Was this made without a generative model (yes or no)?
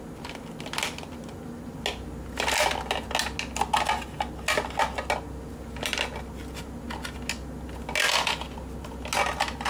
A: yes